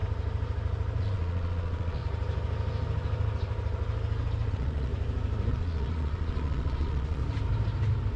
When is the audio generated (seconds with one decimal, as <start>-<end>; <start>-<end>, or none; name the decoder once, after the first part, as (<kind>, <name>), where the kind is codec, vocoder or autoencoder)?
1.0-2.0 (vocoder, Vocos); 4.5-4.9; 5.5-7.2